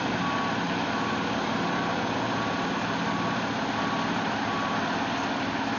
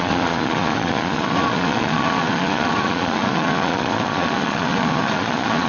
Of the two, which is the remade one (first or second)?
second